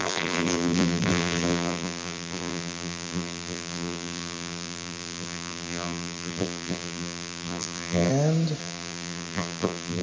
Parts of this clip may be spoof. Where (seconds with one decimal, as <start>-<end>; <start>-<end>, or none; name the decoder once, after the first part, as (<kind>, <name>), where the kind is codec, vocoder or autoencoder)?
0.0-8.1 (vocoder, BigVGAN v2); 8.6-10.0